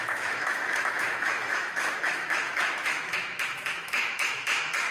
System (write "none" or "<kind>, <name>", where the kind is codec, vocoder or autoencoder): autoencoder, DAC-VAE